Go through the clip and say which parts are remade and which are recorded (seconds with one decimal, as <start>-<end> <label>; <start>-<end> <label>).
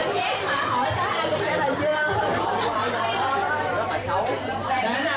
0.0-1.9 recorded; 1.9-5.2 remade